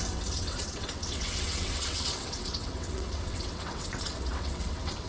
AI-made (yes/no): yes